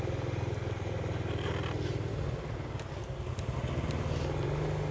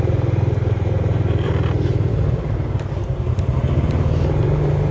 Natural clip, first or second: first